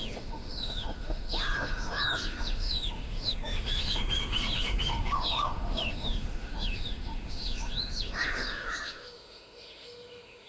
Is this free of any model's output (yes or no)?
no